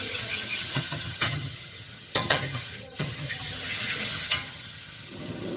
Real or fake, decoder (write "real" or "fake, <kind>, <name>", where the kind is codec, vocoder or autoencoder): fake, vocoder, HiFi-GAN